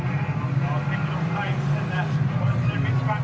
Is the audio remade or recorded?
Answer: recorded